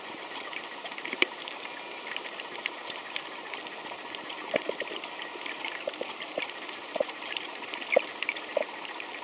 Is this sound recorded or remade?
recorded